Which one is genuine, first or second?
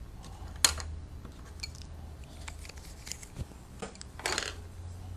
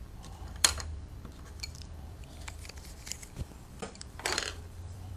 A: first